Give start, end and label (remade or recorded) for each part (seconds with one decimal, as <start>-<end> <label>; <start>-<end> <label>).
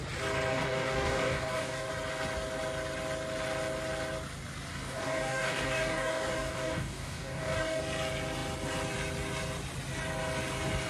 0.0-0.5 recorded; 0.5-1.9 remade; 1.9-4.7 recorded; 4.7-7.8 remade; 7.8-10.9 recorded